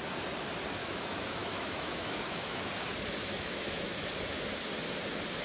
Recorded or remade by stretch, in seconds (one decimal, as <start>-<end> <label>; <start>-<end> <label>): 0.0-0.8 recorded; 0.8-2.7 remade; 2.7-3.2 recorded; 3.2-4.1 remade; 4.1-5.4 recorded